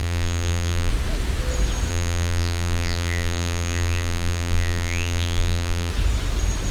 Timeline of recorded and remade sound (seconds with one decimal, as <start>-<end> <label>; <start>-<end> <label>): 0.0-0.9 remade; 0.9-1.9 recorded; 1.9-5.9 remade; 5.9-6.7 recorded